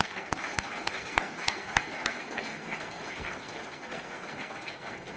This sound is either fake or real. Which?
fake